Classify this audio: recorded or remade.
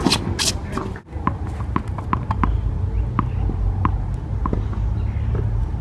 recorded